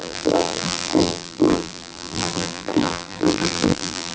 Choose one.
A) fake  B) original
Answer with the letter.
A